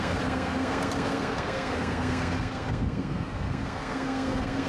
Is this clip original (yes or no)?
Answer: no